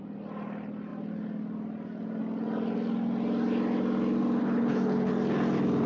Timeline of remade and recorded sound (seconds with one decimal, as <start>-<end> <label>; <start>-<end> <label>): 0.0-4.4 recorded; 4.4-5.1 remade; 5.1-5.9 recorded